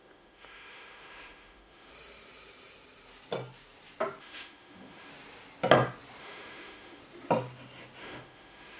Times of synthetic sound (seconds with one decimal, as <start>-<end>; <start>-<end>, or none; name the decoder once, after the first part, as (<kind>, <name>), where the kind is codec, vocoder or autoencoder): 0.0-1.9 (autoencoder, DAC-VAE); 4.2-5.1; 6.2-7.0; 8.0-8.8